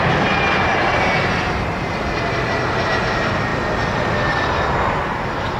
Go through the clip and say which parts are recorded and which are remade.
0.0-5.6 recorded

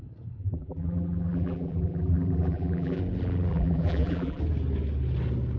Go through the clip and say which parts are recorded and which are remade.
0.0-0.4 recorded; 0.4-3.0 remade; 3.0-3.5 recorded; 3.5-4.4 remade; 4.4-5.6 recorded

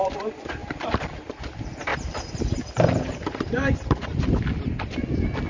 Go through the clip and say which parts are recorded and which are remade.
0.0-1.9 remade; 1.9-3.0 recorded; 3.0-4.1 remade; 4.1-5.5 recorded

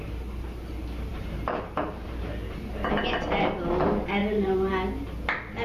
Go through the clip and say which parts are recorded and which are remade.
0.0-1.1 recorded; 1.1-2.7 remade; 2.7-4.2 recorded; 4.2-4.7 remade; 4.7-5.6 recorded

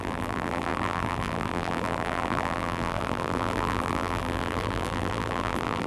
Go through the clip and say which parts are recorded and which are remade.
0.0-5.9 remade

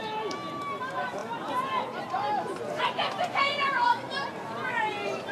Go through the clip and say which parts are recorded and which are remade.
0.0-5.3 recorded

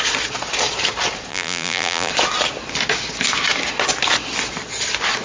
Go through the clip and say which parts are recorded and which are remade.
0.0-1.3 recorded; 1.3-2.1 remade; 2.1-5.2 recorded